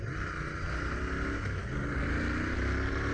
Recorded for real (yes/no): yes